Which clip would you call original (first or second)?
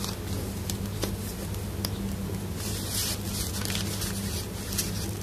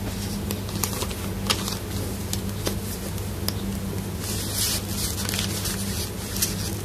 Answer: second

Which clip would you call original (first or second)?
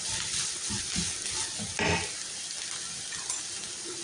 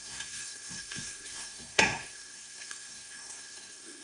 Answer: first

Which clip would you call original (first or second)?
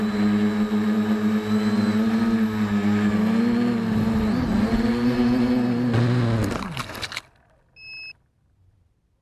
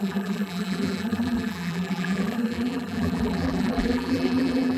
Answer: first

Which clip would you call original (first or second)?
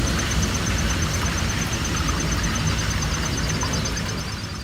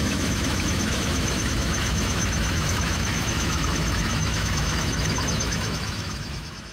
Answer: first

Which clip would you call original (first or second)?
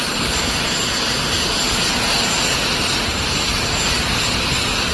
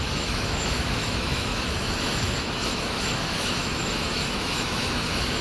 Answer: first